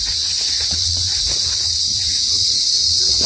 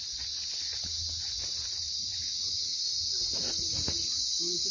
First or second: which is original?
second